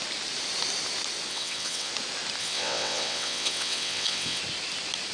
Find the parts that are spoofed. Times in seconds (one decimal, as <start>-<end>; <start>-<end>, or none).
1.3-1.9; 2.4-4.4